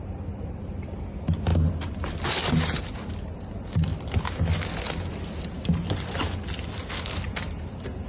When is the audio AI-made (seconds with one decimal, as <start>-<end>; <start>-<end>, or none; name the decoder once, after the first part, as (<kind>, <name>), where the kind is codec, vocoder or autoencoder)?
none